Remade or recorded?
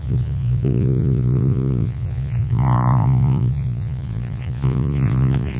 remade